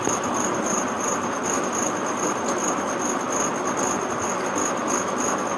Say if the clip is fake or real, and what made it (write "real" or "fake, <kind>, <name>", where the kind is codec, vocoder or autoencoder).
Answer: real